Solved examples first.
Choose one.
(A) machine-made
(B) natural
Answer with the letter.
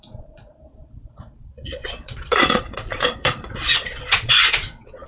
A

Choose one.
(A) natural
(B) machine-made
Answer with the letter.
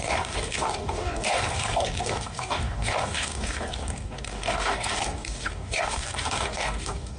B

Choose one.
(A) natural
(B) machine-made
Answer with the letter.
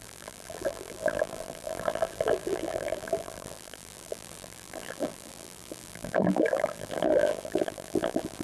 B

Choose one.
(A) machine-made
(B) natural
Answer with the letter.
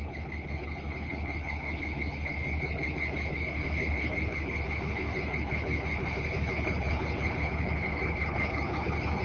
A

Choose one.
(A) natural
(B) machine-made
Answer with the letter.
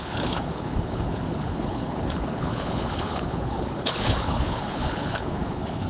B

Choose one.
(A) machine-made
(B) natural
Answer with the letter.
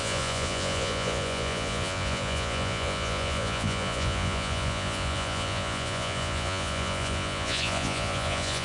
A